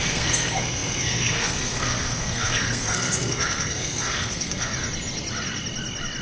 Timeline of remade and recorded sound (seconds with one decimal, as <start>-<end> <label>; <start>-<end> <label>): 0.0-4.7 remade; 4.7-6.2 recorded